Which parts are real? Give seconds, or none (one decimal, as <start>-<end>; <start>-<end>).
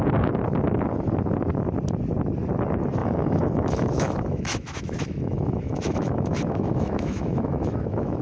0.0-3.0